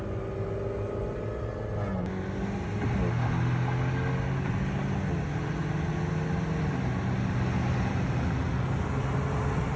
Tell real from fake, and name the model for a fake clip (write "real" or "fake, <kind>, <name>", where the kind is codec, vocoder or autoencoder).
real